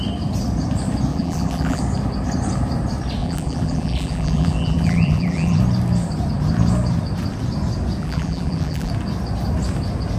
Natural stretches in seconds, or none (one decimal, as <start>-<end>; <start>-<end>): 0.0-1.1; 1.8-3.2; 5.6-8.0; 8.9-10.2